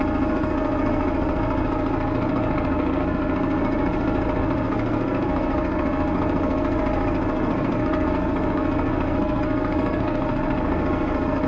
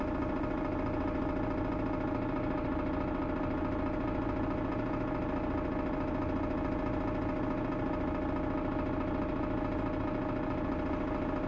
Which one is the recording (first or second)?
second